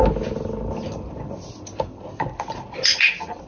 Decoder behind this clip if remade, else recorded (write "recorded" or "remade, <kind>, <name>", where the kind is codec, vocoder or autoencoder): recorded